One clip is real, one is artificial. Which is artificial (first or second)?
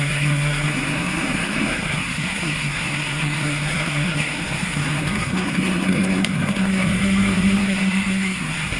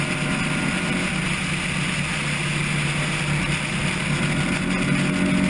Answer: first